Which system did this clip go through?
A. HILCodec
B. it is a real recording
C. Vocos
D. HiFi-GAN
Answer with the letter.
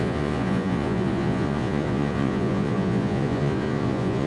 C